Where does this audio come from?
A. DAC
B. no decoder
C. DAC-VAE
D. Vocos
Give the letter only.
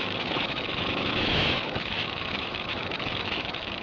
C